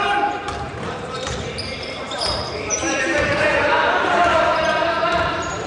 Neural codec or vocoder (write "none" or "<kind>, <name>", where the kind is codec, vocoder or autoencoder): vocoder, BigVGAN v2